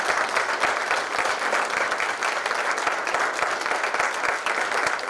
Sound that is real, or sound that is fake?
real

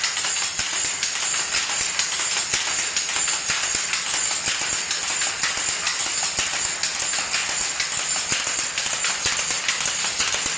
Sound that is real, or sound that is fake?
real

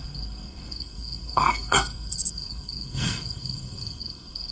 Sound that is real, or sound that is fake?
fake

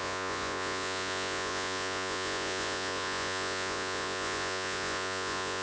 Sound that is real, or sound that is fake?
fake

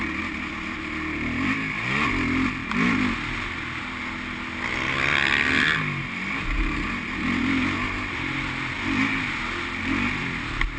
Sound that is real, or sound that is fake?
real